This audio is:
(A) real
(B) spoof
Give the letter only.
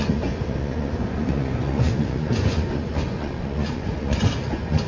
B